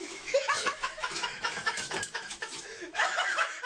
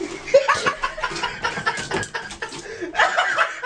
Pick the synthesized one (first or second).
first